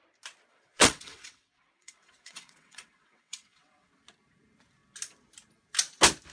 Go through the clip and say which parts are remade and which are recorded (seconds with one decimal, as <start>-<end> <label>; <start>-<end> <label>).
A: 0.0-0.5 recorded; 0.5-3.9 remade; 3.9-6.3 recorded

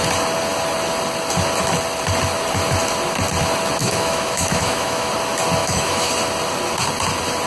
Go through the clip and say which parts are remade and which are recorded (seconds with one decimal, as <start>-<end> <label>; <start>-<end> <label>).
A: 0.0-3.8 recorded; 3.8-5.1 remade; 5.1-5.6 recorded; 5.6-6.1 remade; 6.1-7.5 recorded

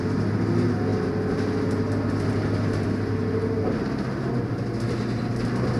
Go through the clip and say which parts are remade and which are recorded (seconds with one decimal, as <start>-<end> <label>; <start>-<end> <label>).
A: 0.0-5.8 recorded

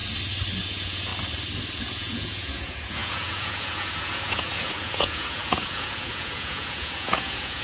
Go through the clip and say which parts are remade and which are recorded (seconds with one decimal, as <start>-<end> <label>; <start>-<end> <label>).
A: 0.0-0.6 recorded; 0.6-1.1 remade; 1.1-1.8 recorded; 1.8-7.6 remade

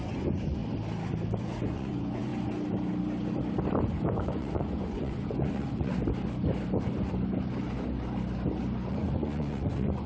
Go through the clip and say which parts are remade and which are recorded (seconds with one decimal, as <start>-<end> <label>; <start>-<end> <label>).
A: 0.0-0.6 remade; 0.6-1.4 recorded; 1.4-2.3 remade; 2.3-3.9 recorded; 3.9-5.9 remade; 5.9-8.9 recorded; 8.9-10.1 remade

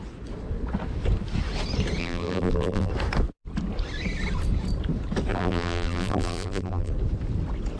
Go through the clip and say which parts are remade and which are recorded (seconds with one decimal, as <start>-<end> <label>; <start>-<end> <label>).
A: 0.0-2.0 recorded; 2.0-2.9 remade; 2.9-5.3 recorded; 5.3-6.9 remade; 6.9-7.8 recorded

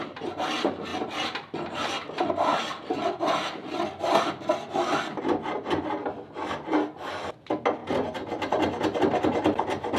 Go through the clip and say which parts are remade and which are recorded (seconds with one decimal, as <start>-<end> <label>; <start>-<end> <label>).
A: 0.0-10.0 recorded